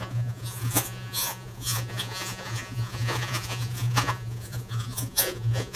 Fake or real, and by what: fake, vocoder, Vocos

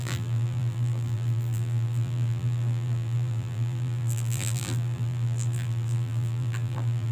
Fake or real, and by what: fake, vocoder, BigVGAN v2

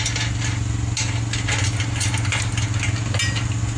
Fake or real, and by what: real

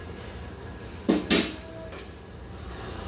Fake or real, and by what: real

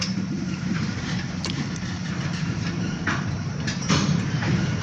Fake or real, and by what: fake, vocoder, BigVGAN v2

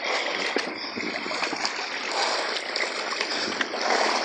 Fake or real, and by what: real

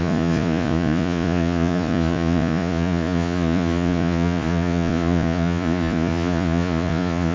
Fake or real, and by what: fake, vocoder, Vocos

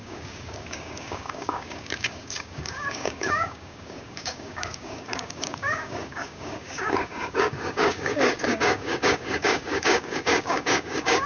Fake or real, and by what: fake, codec, DAC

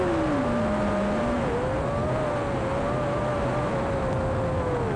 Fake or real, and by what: real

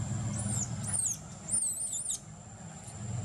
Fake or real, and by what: real